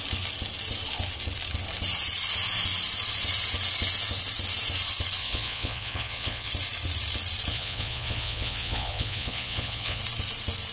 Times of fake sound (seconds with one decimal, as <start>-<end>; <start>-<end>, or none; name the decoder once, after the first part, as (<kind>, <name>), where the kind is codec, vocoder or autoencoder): 5.2-6.5 (vocoder, Vocos); 7.5-10.0